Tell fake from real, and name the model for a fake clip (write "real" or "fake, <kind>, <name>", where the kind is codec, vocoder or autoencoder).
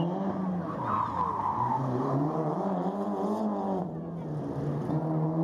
real